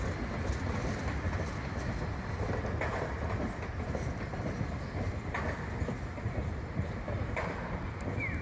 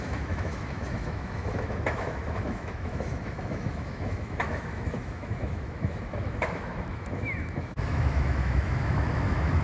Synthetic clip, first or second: second